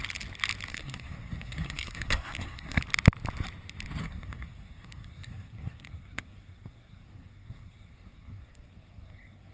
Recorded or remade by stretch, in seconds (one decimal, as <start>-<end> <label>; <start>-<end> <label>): 0.0-0.7 recorded; 0.7-2.8 remade; 2.8-4.0 recorded; 4.0-9.5 remade